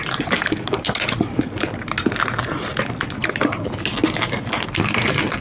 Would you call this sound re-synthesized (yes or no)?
no